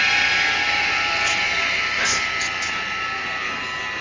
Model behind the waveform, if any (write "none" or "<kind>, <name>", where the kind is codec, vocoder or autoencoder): none